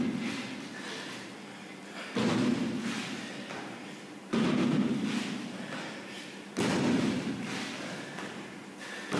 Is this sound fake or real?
real